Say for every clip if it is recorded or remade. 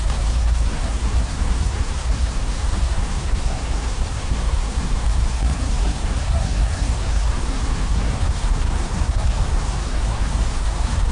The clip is remade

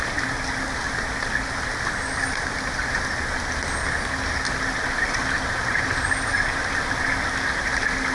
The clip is recorded